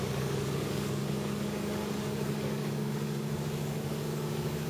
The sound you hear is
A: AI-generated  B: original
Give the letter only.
A